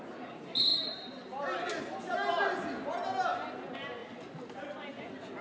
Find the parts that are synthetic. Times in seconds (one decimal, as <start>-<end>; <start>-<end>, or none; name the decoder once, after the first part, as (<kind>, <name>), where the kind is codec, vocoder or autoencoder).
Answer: none